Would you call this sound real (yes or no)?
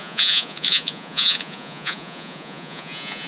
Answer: no